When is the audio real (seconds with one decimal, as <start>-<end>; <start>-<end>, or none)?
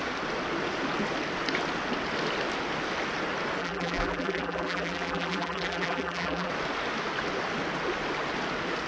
0.0-3.6; 6.5-8.9